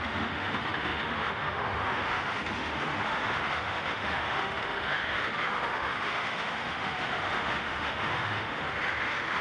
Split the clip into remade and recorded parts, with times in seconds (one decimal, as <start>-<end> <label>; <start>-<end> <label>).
0.0-9.4 remade